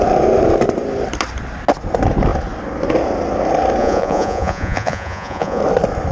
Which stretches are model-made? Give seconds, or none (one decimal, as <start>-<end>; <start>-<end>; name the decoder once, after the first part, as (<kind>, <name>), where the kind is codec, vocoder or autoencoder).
3.8-5.6 (vocoder, Vocos)